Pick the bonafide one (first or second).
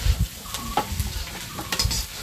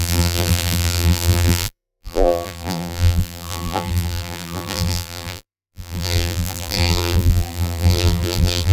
first